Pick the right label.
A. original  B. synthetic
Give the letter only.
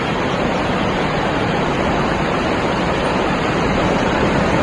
B